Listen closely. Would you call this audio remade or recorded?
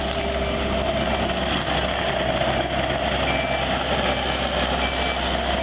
recorded